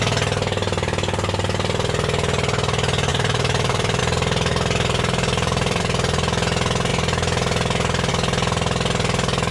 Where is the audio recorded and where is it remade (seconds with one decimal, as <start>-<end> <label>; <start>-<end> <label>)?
0.0-3.1 recorded; 3.1-4.0 remade; 4.0-4.5 recorded; 4.5-5.8 remade; 5.8-9.5 recorded